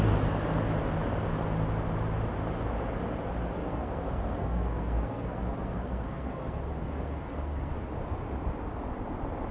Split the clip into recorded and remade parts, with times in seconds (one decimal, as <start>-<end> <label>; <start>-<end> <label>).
0.0-3.6 recorded; 3.6-7.7 remade; 7.7-9.5 recorded